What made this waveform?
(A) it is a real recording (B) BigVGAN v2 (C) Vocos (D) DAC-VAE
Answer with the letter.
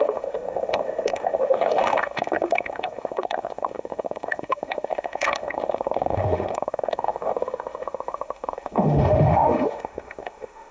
D